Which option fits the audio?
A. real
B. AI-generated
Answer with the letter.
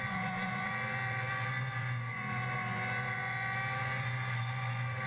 B